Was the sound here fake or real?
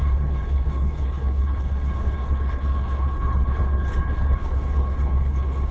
fake